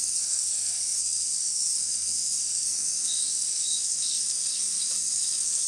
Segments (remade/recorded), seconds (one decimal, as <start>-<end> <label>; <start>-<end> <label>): 0.0-5.7 remade